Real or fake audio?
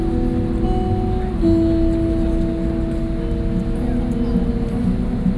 real